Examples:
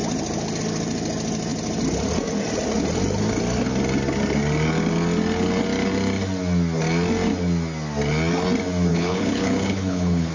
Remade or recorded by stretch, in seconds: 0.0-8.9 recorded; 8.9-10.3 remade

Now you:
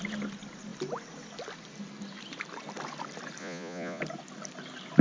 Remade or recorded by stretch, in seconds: 0.0-3.4 recorded; 3.4-4.0 remade; 4.0-5.0 recorded

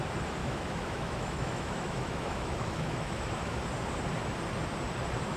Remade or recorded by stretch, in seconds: 0.0-0.4 recorded; 0.4-3.6 remade; 3.6-5.4 recorded

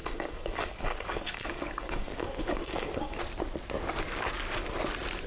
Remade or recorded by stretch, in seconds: 0.0-3.2 remade; 3.2-5.3 recorded

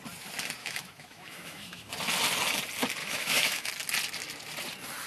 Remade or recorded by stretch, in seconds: 0.0-0.6 recorded; 0.6-1.9 remade; 1.9-3.0 recorded; 3.0-3.7 remade; 3.7-5.1 recorded